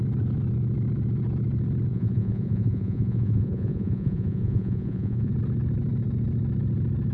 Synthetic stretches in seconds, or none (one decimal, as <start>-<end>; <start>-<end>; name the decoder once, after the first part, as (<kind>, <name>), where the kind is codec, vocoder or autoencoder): 1.9-5.3 (vocoder, Vocos)